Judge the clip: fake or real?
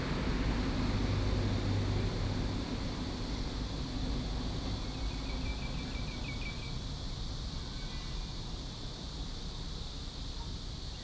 real